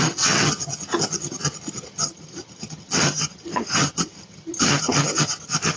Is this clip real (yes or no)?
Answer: no